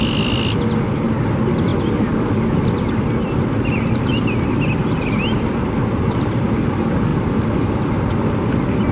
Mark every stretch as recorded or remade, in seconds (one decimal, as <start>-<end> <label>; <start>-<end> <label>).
0.0-1.7 recorded; 1.7-6.5 remade; 6.5-8.9 recorded